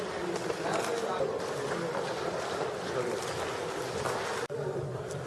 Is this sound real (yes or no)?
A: yes